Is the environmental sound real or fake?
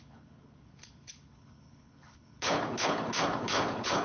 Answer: fake